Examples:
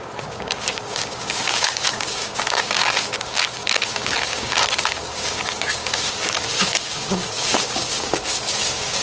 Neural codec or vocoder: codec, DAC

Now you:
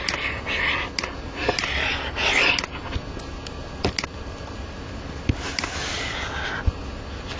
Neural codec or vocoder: none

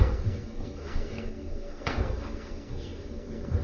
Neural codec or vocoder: codec, SNAC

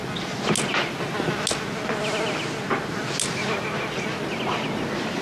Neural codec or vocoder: none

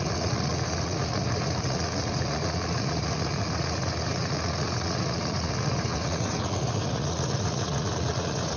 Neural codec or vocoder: vocoder, Vocos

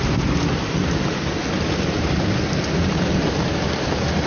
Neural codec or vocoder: none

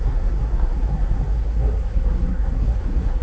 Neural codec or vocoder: codec, SNAC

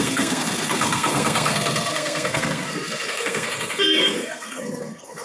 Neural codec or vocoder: codec, SNAC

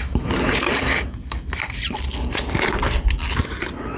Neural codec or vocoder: none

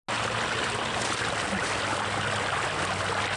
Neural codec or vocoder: none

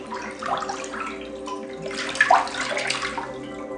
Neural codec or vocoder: none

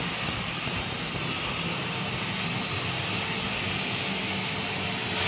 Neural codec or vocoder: none